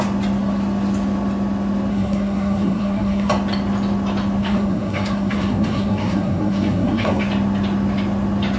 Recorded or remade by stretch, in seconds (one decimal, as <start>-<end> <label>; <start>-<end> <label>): 0.0-1.9 recorded; 1.9-3.3 remade; 3.3-4.4 recorded; 4.4-7.2 remade; 7.2-8.6 recorded